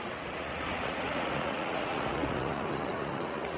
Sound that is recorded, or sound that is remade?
remade